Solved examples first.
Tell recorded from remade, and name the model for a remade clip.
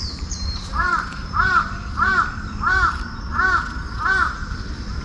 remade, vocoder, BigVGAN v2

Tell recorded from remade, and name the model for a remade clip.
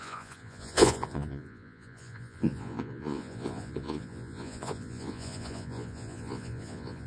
remade, vocoder, Vocos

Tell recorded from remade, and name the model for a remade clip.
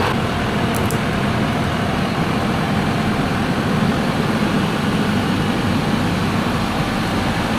remade, vocoder, BigVGAN v2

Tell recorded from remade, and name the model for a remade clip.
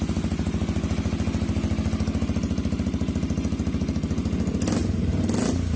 recorded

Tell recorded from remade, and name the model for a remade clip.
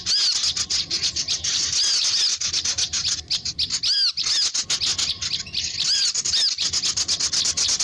recorded